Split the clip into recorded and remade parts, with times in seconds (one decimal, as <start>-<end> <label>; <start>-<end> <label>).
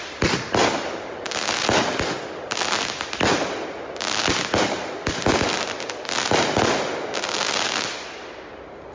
0.0-8.9 recorded